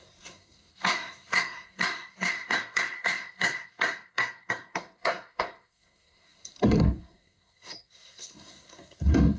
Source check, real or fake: fake